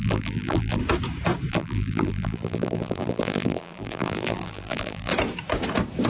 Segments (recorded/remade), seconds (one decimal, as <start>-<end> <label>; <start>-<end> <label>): 0.0-0.8 remade; 0.8-1.5 recorded; 1.5-5.1 remade; 5.1-6.1 recorded